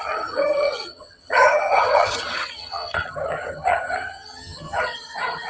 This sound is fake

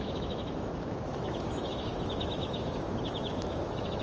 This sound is fake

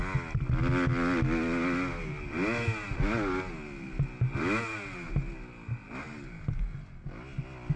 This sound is real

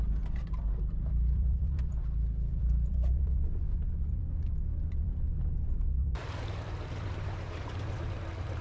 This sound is fake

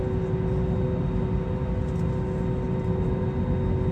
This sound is real